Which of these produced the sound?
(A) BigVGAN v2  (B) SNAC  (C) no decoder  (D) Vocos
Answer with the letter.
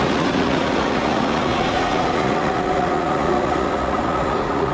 D